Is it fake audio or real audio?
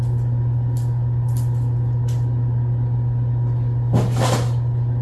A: real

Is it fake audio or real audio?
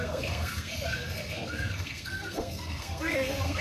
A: fake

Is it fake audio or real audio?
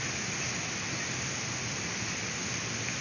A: real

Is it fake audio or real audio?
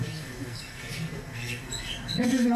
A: fake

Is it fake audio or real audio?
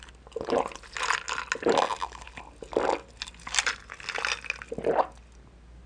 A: real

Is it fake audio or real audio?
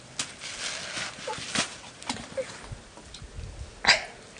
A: real